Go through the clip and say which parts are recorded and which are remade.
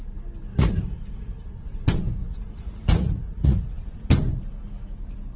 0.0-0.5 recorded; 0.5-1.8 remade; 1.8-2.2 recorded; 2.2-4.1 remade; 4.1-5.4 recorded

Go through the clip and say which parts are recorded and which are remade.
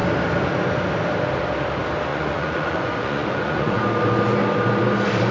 0.0-2.1 recorded; 2.1-3.8 remade; 3.8-5.3 recorded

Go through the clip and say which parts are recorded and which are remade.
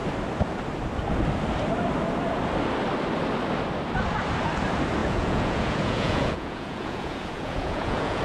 0.0-5.0 recorded; 5.0-8.2 remade